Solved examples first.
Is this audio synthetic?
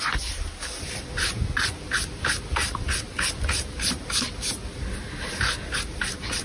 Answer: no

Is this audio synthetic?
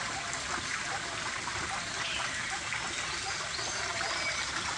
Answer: no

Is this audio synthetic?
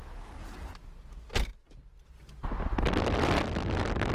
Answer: no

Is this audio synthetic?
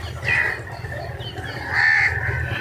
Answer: no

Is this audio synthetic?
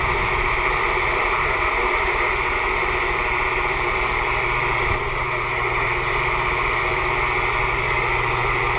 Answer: no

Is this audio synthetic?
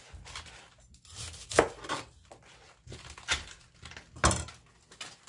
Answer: no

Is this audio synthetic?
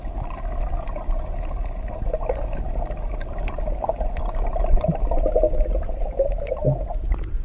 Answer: no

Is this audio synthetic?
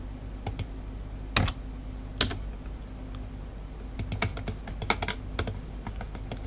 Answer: no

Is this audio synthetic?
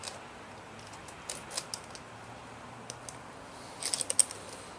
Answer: no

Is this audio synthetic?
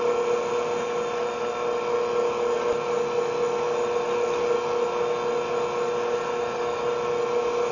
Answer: no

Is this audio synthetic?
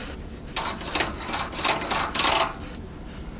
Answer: no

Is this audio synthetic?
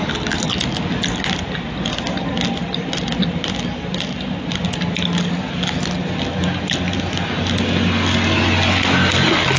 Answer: no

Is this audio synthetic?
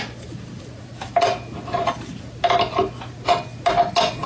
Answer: no